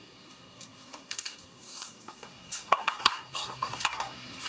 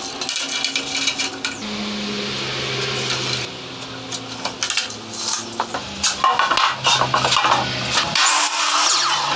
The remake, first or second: first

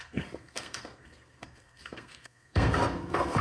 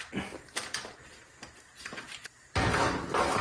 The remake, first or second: first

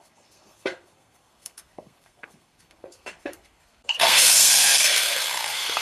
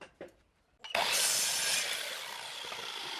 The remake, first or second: first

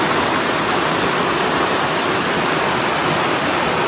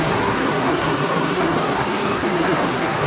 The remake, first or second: second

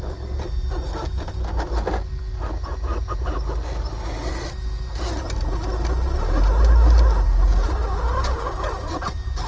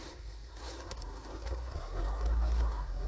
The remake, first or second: second